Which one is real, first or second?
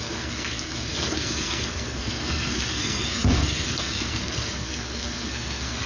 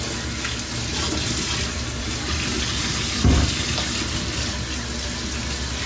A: second